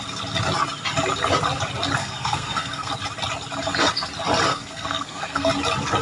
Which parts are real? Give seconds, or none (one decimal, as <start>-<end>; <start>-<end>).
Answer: 0.0-2.0; 2.9-4.5; 5.5-6.0